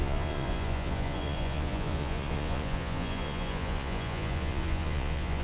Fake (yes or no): yes